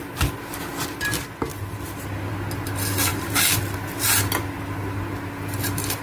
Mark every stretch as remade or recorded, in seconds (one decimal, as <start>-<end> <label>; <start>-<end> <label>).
0.0-6.0 recorded